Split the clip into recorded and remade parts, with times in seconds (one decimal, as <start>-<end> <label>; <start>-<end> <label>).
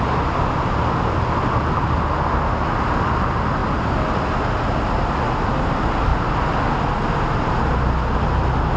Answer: 0.0-8.8 recorded